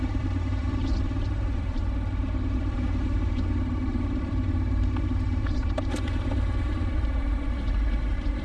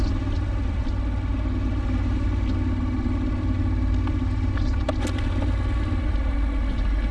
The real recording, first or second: second